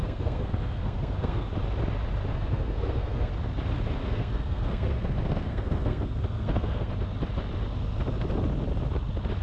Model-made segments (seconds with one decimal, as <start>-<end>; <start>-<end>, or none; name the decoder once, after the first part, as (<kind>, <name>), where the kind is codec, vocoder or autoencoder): 0.0-1.5 (codec, SNAC); 2.3-3.3; 4.0-6.9